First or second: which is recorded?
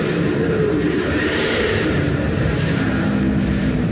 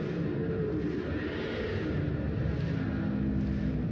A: second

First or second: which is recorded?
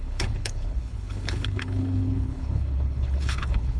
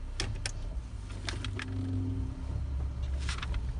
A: second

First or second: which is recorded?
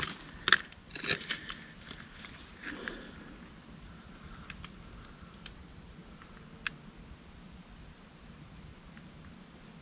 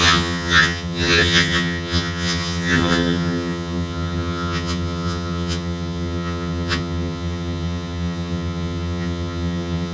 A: first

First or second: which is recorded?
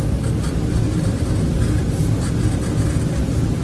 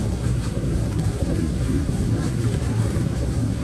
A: first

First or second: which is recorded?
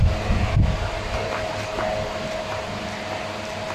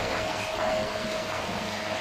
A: first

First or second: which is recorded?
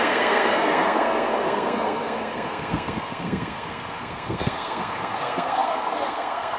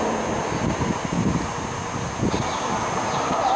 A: second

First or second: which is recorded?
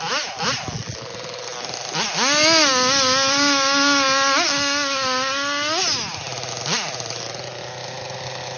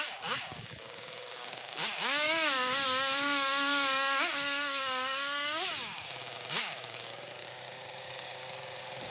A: first